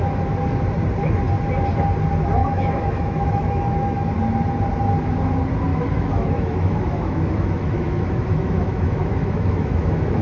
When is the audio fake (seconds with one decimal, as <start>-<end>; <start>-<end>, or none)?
2.4-4.1; 5.7-10.2